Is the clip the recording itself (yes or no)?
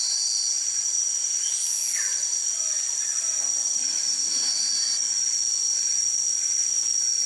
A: yes